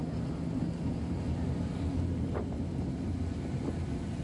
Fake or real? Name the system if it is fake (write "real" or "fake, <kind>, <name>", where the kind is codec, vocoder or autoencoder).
real